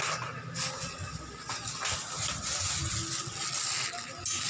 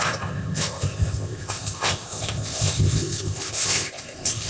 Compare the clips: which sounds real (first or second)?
first